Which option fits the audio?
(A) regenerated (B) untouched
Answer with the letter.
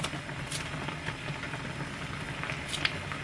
B